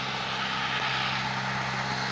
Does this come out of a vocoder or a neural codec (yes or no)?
no